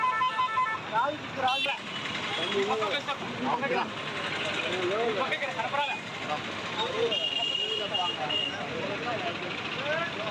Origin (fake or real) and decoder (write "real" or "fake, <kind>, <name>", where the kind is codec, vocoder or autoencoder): real